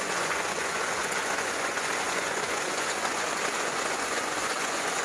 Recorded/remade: remade